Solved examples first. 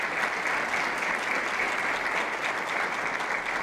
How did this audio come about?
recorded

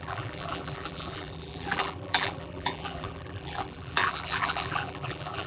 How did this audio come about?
remade